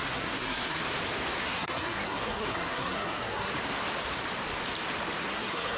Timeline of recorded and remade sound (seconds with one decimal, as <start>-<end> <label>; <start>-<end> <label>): 0.0-0.8 remade; 0.8-1.4 recorded; 1.4-3.5 remade; 3.5-5.2 recorded; 5.2-5.8 remade